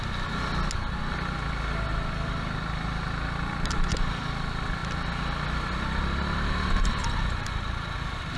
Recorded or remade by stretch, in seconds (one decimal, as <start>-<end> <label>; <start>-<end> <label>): 0.0-8.4 recorded